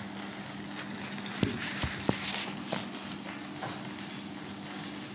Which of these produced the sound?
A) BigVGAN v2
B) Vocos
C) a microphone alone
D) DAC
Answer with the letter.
C